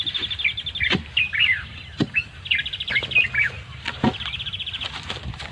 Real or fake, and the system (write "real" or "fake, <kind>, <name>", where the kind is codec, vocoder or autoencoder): real